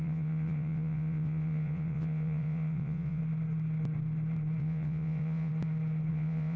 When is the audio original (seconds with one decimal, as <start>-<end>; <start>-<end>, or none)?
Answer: 3.2-4.6; 5.5-6.1